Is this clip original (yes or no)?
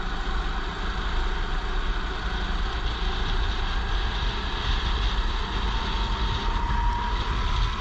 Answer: yes